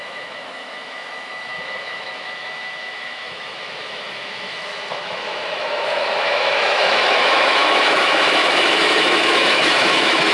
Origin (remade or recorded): remade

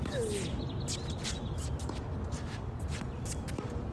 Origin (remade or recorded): recorded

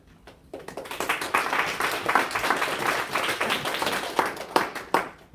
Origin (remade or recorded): recorded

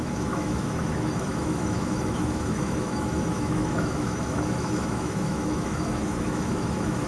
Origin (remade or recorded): remade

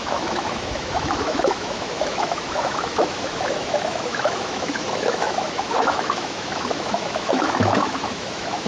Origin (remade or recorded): remade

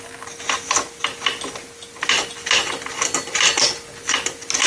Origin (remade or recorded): recorded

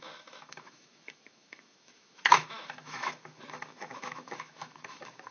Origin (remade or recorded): remade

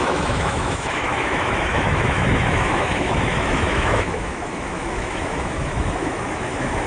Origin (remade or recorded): remade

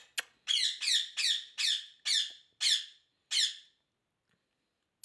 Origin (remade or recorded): recorded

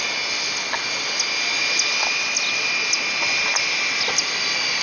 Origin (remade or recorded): recorded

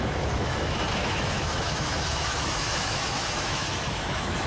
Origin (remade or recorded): remade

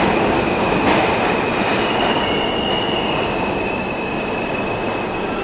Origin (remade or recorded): recorded